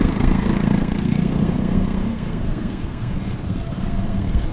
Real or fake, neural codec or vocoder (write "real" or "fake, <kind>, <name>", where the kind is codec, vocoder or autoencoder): fake, codec, SNAC